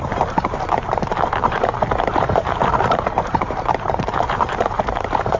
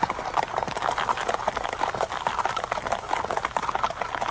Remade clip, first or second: first